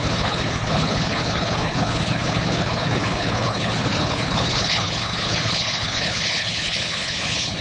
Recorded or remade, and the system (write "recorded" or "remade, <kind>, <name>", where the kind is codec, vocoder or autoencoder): remade, codec, HILCodec